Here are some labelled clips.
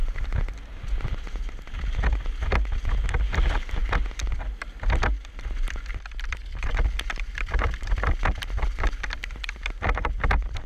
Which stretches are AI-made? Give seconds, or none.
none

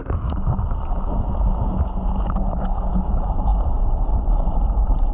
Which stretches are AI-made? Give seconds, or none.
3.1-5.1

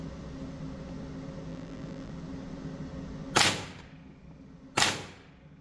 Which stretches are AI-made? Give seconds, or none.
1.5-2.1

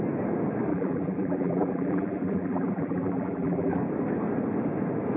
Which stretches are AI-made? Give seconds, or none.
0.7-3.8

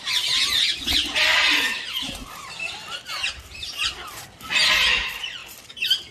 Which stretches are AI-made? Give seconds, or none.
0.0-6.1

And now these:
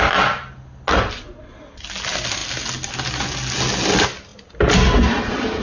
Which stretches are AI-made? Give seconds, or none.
none